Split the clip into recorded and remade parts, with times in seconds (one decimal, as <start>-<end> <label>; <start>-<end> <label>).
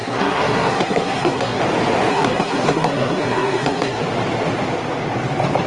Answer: 0.0-1.6 remade; 1.6-2.1 recorded; 2.1-4.0 remade; 4.0-5.7 recorded